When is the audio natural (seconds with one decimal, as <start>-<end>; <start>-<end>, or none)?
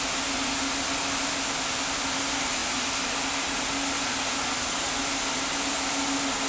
0.0-6.5